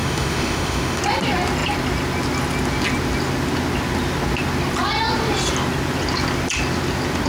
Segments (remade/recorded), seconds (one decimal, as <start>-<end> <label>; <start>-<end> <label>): 0.0-1.0 remade; 1.0-7.3 recorded